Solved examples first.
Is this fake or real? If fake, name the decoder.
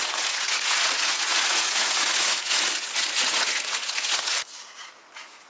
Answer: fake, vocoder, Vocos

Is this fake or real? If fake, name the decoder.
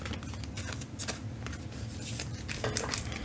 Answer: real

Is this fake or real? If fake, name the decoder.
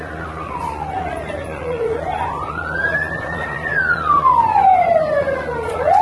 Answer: fake, vocoder, Vocos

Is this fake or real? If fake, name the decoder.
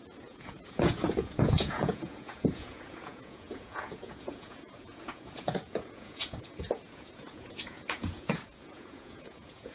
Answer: fake, vocoder, Vocos